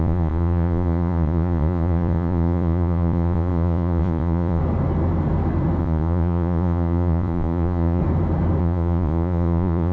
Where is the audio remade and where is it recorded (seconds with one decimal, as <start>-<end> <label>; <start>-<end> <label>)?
0.0-4.6 remade; 4.6-5.8 recorded; 5.8-8.0 remade; 8.0-8.6 recorded; 8.6-9.9 remade